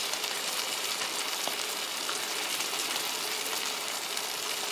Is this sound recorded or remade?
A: remade